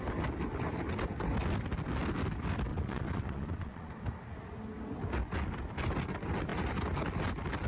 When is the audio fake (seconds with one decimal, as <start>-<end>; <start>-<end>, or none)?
2.7-3.9